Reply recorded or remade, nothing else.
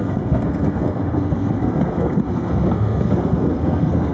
remade